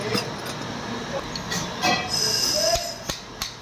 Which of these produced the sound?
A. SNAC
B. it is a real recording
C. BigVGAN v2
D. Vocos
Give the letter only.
B